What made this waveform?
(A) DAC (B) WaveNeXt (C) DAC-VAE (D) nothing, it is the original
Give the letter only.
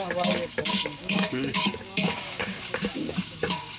A